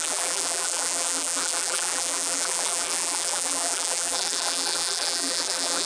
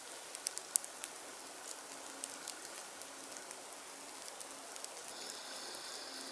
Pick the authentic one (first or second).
second